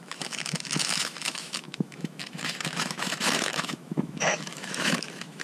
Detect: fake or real fake